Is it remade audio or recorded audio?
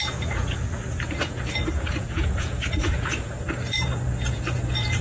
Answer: remade